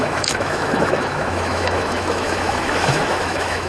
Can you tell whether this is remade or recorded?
remade